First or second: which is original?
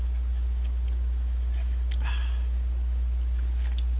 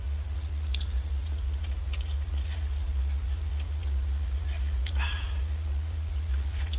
first